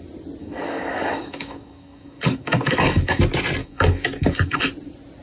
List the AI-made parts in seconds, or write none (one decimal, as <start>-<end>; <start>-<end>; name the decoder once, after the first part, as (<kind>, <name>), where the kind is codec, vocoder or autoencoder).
0.4-3.2 (codec, DAC); 3.6-4.7

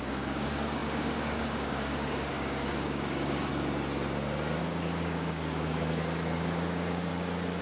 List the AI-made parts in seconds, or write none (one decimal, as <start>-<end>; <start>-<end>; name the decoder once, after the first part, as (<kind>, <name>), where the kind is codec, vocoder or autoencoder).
0.0-3.5 (codec, DAC); 4.6-7.1

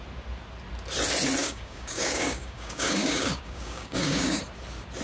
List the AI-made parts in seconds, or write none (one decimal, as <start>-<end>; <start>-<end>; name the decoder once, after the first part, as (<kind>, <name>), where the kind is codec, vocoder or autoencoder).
1.4-4.4 (codec, DAC)

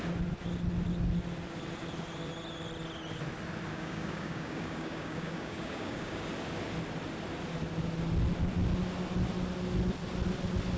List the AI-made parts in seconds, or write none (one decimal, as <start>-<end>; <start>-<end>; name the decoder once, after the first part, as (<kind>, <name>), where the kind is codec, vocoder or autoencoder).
3.7-6.2 (codec, DAC)

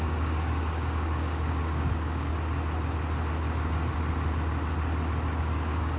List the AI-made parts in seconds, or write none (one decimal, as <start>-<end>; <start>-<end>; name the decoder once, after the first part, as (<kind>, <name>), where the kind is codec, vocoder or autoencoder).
0.0-2.3 (codec, DAC); 5.4-6.0

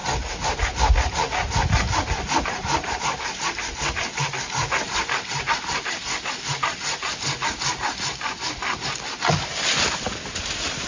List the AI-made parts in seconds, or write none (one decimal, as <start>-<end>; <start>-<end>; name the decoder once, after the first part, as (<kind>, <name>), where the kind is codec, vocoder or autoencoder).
none

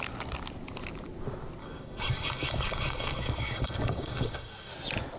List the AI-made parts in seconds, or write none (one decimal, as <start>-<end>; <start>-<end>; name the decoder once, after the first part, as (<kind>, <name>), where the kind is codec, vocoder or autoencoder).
1.6-4.7 (codec, DAC)